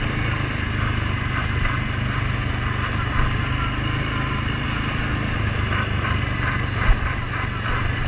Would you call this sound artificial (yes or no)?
no